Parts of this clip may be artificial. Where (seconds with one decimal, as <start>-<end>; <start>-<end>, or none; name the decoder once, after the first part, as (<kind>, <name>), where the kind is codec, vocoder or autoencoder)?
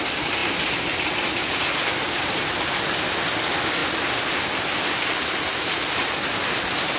none